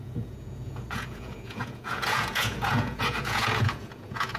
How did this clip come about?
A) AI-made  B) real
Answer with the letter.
A